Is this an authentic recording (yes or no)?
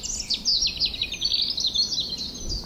yes